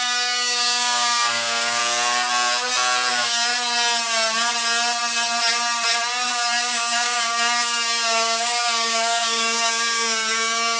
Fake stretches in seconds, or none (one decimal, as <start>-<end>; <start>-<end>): 0.0-1.8; 3.1-3.5; 6.3-10.8